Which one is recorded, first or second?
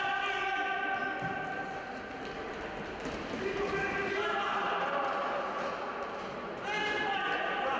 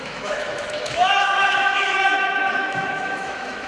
first